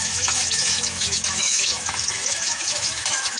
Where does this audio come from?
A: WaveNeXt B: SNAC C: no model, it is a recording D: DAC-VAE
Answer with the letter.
D